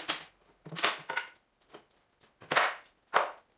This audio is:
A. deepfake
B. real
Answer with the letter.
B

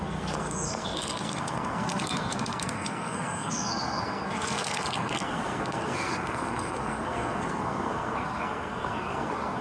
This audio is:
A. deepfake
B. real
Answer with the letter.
A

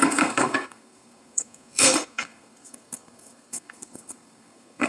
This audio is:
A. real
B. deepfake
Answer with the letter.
B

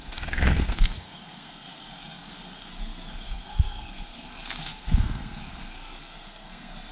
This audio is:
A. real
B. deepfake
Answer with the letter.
B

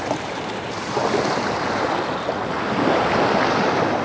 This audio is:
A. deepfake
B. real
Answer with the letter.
A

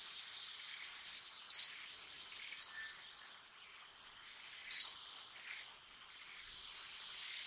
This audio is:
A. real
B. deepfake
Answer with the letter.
A